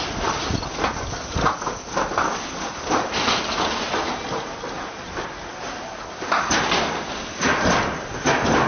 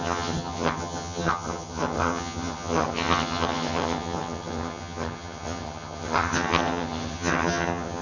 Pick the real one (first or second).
first